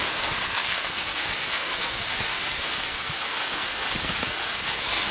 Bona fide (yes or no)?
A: no